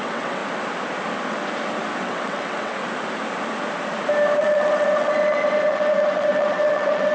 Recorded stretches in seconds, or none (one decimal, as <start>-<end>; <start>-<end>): 0.4-2.0; 2.8-4.4